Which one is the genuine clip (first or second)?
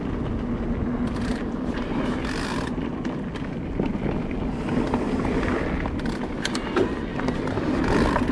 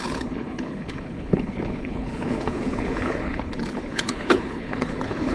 first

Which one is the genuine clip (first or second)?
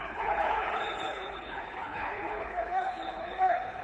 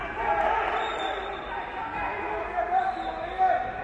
second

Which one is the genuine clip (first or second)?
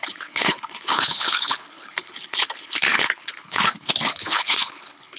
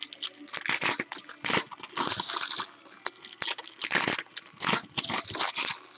second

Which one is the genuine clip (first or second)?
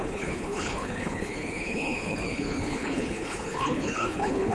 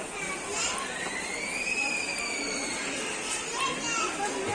second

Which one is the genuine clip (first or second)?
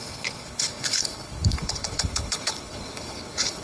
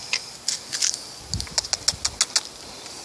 second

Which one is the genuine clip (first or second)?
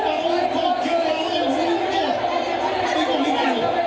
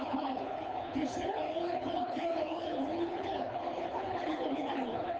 first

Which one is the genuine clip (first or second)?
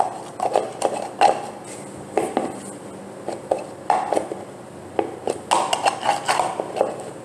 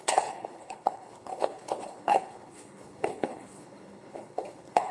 first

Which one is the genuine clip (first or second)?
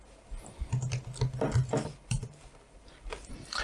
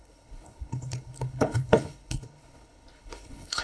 first